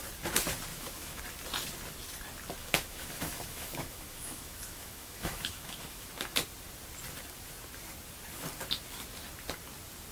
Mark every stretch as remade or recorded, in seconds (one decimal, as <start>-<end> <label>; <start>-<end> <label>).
0.0-0.7 recorded; 0.7-1.2 remade; 1.2-2.6 recorded; 2.6-6.1 remade; 6.1-10.1 recorded

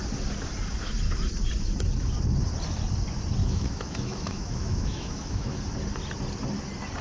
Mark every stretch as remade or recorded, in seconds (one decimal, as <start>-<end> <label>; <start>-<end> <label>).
0.0-3.4 recorded; 3.4-5.6 remade; 5.6-7.0 recorded

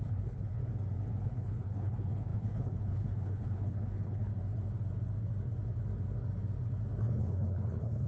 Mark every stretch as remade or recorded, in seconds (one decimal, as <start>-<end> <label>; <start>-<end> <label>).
0.0-0.6 remade; 0.6-1.2 recorded; 1.2-4.3 remade; 4.3-7.0 recorded; 7.0-8.1 remade

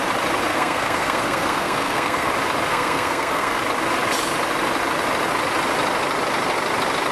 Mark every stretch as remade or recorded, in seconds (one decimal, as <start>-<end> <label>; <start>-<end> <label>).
0.0-0.5 recorded; 0.5-2.3 remade; 2.3-2.7 recorded; 2.7-3.6 remade; 3.6-7.1 recorded

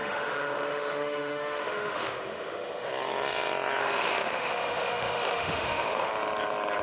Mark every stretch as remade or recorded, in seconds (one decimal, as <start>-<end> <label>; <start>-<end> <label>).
0.0-2.9 remade; 2.9-3.8 recorded; 3.8-6.1 remade; 6.1-6.8 recorded